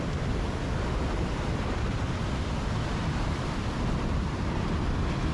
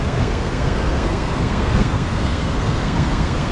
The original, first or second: first